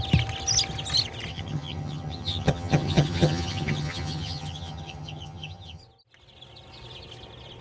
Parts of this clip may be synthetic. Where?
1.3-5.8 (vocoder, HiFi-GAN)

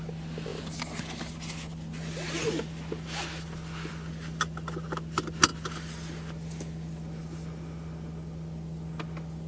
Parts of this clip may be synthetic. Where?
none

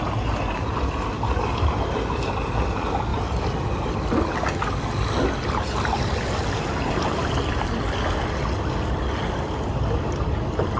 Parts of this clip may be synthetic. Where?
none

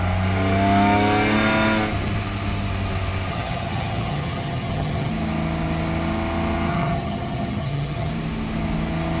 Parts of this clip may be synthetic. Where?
3.3-5.1 (vocoder, HiFi-GAN); 6.7-8.1

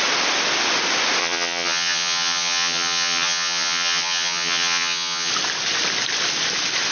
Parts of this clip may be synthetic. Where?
1.2-5.3 (vocoder, HiFi-GAN)

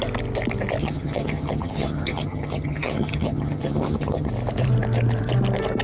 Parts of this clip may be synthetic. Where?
0.8-4.3 (vocoder, HiFi-GAN)

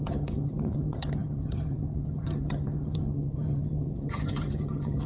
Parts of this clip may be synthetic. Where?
0.0-5.1 (vocoder, HiFi-GAN)